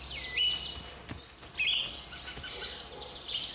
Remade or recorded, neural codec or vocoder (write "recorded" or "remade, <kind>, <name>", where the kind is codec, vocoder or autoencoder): recorded